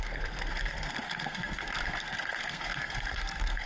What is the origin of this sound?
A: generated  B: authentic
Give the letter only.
A